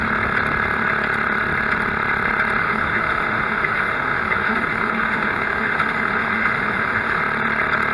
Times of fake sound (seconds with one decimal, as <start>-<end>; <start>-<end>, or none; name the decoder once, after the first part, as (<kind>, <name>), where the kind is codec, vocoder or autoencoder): 2.6-7.2 (autoencoder, DAC-VAE)